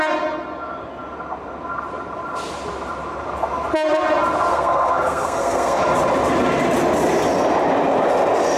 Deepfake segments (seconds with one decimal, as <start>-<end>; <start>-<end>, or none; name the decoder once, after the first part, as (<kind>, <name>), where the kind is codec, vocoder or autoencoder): 4.5-5.8 (codec, SNAC)